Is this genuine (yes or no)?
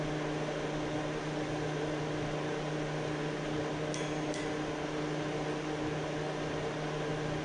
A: yes